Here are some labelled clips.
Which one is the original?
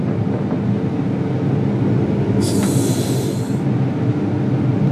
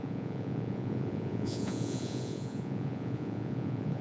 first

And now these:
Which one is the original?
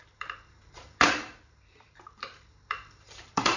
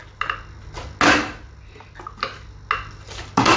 second